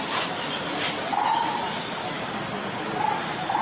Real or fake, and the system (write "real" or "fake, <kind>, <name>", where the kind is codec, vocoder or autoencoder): real